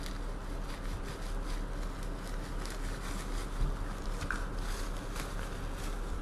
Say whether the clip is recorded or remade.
recorded